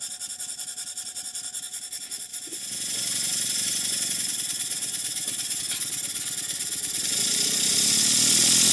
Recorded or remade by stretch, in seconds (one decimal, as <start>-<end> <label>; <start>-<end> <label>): 0.0-2.3 recorded; 2.3-5.6 remade; 5.6-8.7 recorded